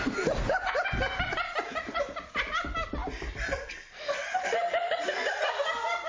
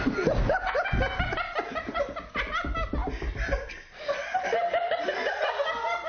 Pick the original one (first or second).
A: second